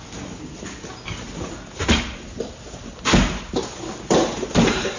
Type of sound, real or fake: real